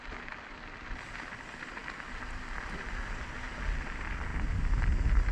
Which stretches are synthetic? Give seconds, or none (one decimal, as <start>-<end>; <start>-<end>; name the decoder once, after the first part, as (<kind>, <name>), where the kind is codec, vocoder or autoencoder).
none